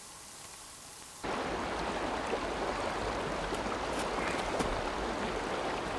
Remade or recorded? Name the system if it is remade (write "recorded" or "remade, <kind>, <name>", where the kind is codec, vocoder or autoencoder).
recorded